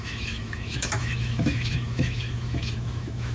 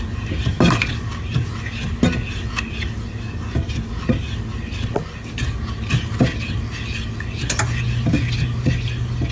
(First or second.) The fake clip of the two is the first